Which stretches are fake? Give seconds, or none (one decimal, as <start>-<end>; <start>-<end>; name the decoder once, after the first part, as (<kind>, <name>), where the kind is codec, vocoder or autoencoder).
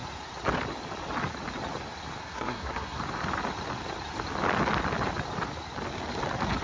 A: 2.2-3.0 (codec, SNAC)